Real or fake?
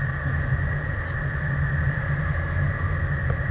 real